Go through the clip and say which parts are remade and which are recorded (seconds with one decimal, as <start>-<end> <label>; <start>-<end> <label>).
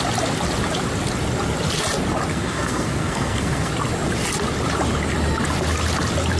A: 0.0-2.3 recorded; 2.3-3.7 remade; 3.7-6.4 recorded